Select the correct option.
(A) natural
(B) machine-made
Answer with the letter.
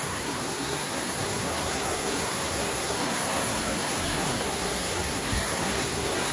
B